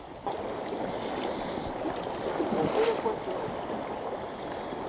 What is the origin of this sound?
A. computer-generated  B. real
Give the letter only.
B